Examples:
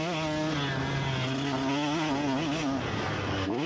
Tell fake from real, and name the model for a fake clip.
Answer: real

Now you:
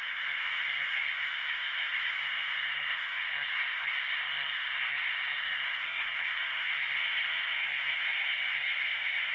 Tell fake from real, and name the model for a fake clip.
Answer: fake, codec, SNAC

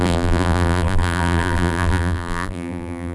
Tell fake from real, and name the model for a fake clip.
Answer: fake, vocoder, BigVGAN v2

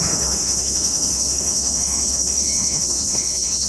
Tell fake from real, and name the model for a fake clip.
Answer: fake, autoencoder, DAC-VAE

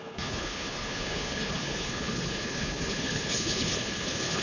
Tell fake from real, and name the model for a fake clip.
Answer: fake, codec, HILCodec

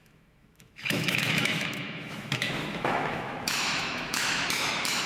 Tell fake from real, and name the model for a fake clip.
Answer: fake, autoencoder, DAC-VAE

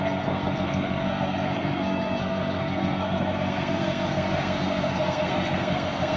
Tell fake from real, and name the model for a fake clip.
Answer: fake, codec, SNAC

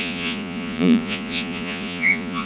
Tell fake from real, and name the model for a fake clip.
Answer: fake, vocoder, Vocos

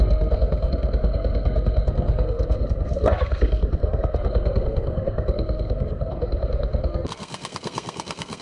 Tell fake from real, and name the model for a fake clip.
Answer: fake, codec, SNAC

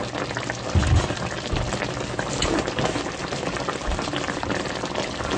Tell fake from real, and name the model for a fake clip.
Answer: real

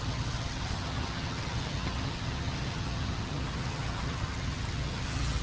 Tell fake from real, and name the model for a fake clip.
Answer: fake, vocoder, HiFi-GAN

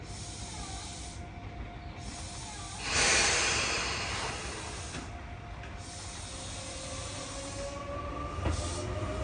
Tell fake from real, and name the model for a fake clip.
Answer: real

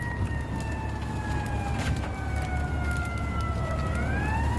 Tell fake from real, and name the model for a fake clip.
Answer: real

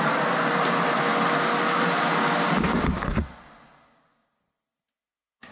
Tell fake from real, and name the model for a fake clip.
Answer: real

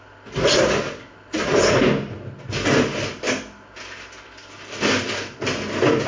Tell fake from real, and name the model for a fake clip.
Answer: real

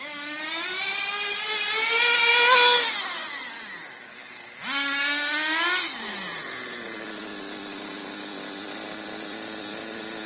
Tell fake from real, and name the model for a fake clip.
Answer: real